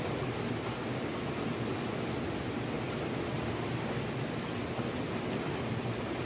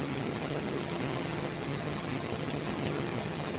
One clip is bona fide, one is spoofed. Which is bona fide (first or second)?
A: first